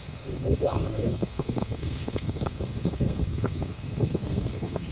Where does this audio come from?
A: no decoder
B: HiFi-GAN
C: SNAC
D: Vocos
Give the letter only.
C